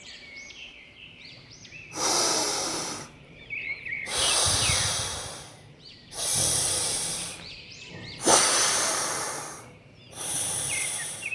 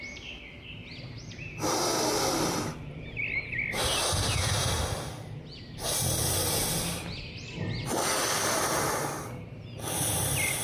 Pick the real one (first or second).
second